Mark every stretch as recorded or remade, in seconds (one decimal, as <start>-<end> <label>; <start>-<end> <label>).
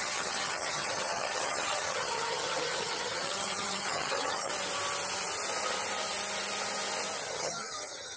0.0-4.5 remade; 4.5-7.3 recorded; 7.3-8.2 remade